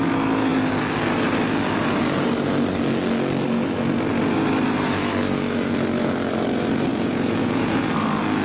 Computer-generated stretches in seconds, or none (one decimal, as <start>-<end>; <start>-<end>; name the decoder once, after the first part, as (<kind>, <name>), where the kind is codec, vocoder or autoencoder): 6.9-7.9 (vocoder, Vocos)